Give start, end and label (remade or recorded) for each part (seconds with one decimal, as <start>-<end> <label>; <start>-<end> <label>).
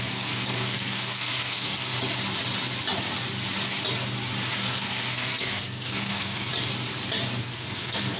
0.0-1.9 remade; 1.9-4.6 recorded; 4.6-6.5 remade; 6.5-7.4 recorded; 7.4-8.2 remade